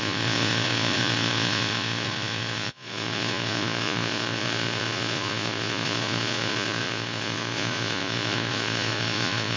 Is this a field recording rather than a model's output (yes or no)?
no